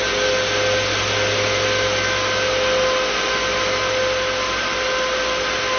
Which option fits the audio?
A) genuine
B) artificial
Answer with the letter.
A